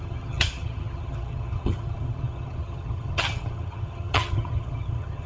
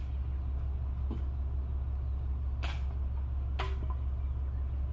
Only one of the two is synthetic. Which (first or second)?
first